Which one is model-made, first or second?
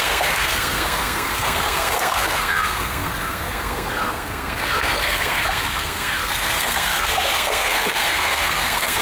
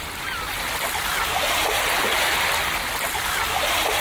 first